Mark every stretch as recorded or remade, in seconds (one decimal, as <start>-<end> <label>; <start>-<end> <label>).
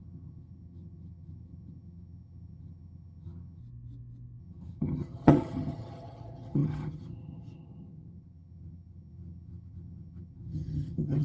0.0-3.6 remade; 3.6-4.4 recorded; 4.4-11.2 remade